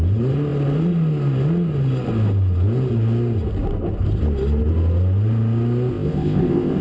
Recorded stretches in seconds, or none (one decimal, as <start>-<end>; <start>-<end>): 0.0-5.9